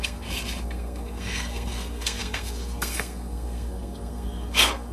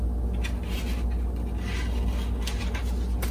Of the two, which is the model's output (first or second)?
first